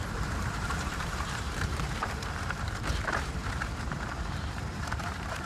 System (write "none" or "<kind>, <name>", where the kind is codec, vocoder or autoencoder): vocoder, BigVGAN v2